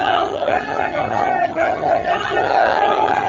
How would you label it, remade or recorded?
remade